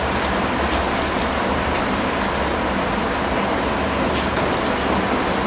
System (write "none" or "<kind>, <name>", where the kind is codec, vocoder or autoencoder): none